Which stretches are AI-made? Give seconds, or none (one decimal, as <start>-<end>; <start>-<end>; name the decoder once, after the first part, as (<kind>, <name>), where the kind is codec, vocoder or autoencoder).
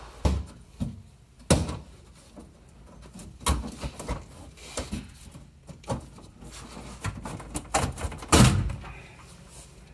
none